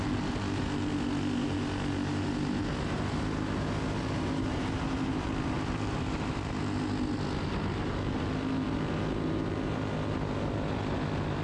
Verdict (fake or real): real